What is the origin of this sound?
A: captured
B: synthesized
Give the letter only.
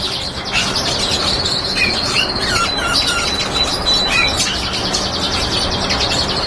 A